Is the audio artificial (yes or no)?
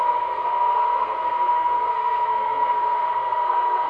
yes